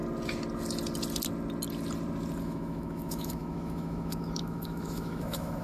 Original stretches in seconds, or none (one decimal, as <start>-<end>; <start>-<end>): 0.0-2.4